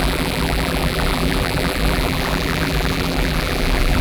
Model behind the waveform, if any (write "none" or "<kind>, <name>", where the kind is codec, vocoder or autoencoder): vocoder, BigVGAN v2